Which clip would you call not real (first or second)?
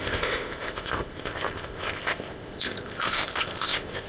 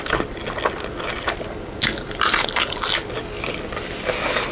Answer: first